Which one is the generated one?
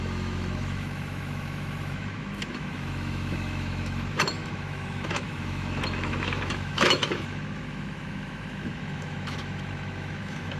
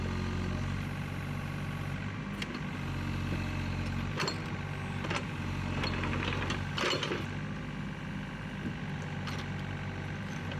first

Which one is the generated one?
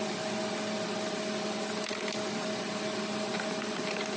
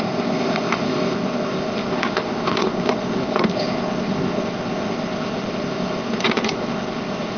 second